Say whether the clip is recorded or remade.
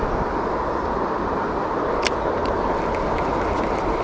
recorded